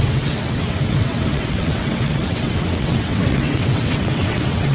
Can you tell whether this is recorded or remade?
remade